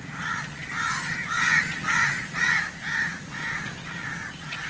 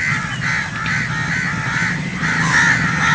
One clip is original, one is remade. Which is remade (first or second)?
first